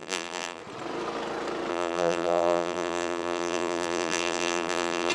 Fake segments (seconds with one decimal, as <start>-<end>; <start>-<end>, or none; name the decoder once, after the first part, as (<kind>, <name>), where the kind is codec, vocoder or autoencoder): 0.0-0.6 (vocoder, BigVGAN v2); 1.7-5.1